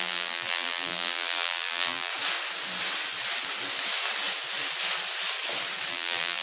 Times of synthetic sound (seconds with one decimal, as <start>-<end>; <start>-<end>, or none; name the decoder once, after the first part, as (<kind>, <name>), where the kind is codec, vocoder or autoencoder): 0.0-2.1 (vocoder, BigVGAN v2); 5.9-6.4